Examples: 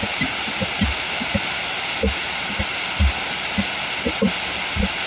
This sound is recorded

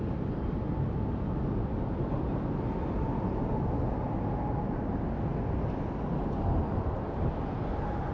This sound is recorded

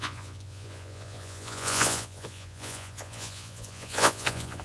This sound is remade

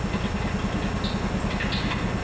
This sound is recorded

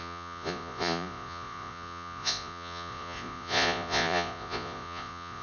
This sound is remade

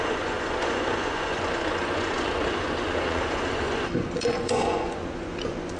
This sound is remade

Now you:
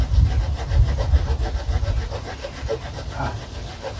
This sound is recorded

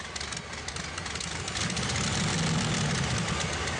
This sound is recorded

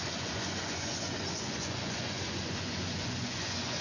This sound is remade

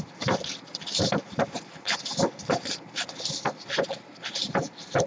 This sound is recorded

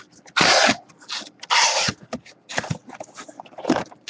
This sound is recorded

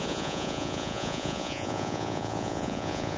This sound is remade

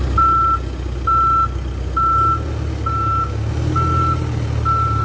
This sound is recorded